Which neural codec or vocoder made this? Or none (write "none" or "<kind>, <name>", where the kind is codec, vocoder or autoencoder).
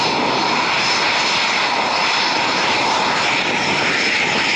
none